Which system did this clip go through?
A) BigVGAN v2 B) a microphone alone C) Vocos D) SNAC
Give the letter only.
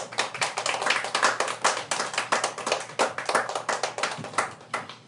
B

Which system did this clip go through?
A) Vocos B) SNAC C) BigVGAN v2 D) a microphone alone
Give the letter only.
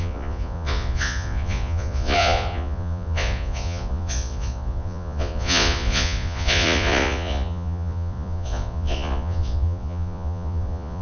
A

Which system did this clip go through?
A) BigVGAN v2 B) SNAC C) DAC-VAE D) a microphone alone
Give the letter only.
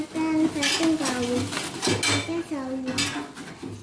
D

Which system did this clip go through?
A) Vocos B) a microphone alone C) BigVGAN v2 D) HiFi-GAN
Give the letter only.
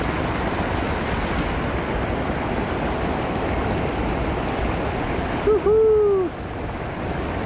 B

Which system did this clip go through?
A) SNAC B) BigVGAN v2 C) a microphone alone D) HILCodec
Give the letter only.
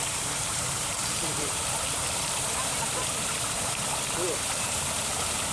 B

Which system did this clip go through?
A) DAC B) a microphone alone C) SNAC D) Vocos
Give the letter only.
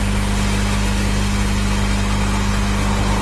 B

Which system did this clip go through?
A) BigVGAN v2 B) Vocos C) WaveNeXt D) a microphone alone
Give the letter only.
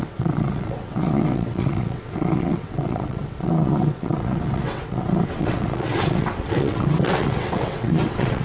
C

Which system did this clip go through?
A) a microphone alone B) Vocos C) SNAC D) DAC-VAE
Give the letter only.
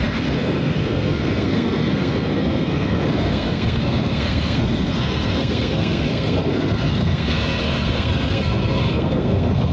C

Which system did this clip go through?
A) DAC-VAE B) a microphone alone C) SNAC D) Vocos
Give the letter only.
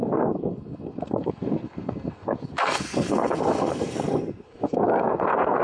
C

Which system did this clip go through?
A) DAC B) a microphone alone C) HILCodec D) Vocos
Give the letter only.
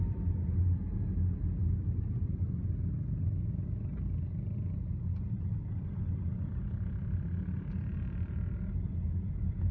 B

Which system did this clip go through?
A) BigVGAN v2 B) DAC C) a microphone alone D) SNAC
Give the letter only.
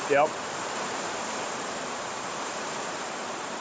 A